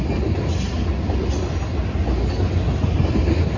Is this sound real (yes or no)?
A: yes